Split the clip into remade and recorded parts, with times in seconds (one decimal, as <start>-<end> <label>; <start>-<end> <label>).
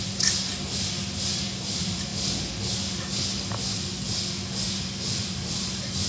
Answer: 0.0-0.5 remade; 0.5-1.6 recorded; 1.6-2.1 remade; 2.1-5.1 recorded; 5.1-6.1 remade